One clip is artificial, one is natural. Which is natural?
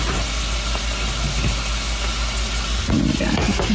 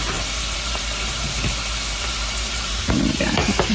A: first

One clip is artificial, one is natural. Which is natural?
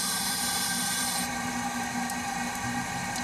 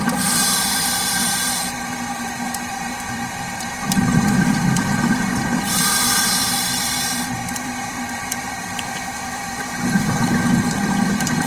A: first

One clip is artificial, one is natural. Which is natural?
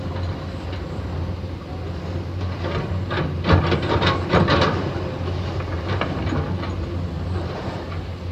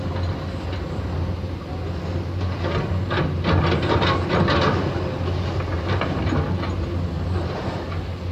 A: second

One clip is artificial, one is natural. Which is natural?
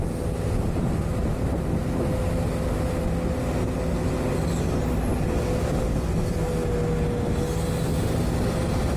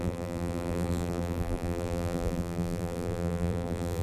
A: first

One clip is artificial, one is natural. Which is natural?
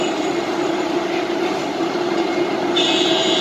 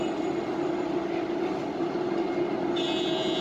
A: second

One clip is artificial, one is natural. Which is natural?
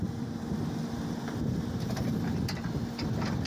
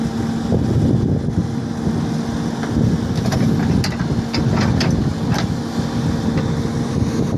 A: second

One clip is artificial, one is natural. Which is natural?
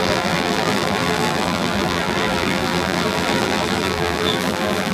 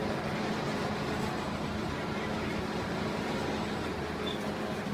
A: second